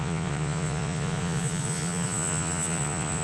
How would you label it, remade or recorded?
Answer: remade